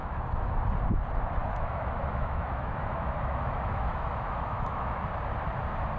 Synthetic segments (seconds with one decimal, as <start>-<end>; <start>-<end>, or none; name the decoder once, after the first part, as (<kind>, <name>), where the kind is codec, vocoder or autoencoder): 0.0-0.5 (autoencoder, DAC-VAE); 1.4-5.0